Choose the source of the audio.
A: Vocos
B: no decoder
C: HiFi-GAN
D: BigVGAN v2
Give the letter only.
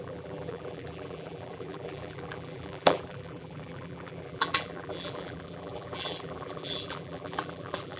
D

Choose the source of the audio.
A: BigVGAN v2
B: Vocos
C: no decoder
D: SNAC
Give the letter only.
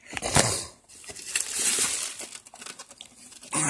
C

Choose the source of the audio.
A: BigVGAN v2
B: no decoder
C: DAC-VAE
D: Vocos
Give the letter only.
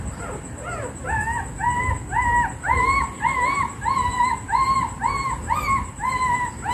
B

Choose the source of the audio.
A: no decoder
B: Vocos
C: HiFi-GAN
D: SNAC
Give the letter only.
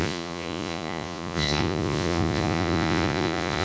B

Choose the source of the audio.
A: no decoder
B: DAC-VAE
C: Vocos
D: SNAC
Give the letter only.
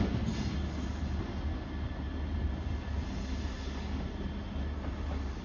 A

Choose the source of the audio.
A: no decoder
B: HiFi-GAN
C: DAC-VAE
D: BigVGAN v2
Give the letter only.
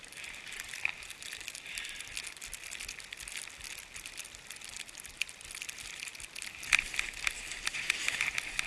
A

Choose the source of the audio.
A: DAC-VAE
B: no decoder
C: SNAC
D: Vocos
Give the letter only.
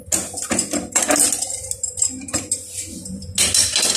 B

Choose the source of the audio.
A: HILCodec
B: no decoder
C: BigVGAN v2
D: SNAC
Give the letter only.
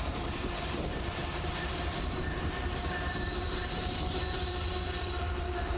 C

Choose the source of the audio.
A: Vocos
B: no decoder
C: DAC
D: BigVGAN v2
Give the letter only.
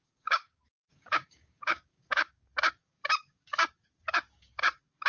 C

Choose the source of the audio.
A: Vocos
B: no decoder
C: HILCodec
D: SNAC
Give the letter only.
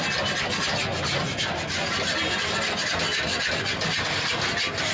B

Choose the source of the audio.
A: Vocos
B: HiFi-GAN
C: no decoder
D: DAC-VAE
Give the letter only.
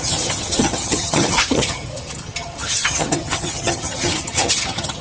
B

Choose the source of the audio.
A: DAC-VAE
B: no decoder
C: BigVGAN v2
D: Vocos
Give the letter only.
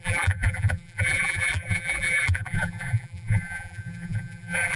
C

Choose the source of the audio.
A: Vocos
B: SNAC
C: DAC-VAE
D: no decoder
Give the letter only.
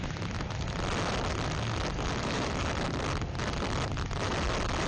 D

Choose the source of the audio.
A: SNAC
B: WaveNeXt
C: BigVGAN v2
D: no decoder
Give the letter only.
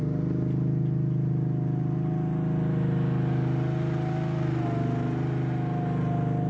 D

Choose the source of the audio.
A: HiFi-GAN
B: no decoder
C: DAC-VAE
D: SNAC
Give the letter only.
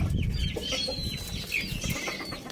B